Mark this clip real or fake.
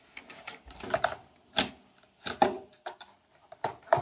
real